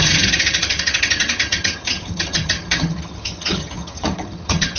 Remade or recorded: remade